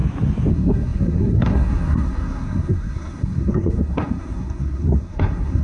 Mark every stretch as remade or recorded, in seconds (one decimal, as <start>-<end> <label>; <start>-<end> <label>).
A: 0.0-0.5 recorded; 0.5-5.6 remade